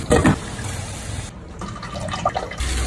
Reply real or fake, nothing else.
real